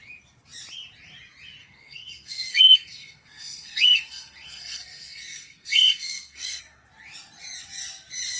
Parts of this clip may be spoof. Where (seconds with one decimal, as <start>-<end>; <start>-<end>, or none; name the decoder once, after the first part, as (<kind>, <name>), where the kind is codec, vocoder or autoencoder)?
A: 1.6-6.6 (codec, SNAC)